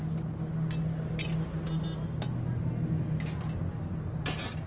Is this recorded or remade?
recorded